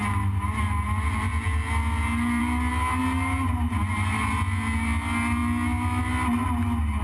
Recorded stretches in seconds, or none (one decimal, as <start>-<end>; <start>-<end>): 0.0-7.0